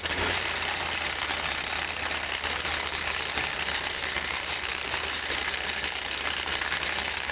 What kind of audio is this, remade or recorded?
remade